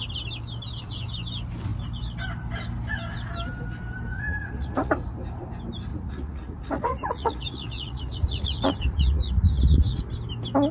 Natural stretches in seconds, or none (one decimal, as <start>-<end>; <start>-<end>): 0.0-4.1; 4.9-5.9; 10.0-10.7